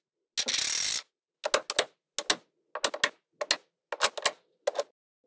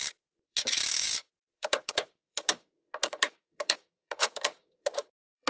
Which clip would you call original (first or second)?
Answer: first